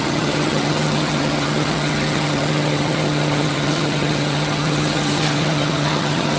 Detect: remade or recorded remade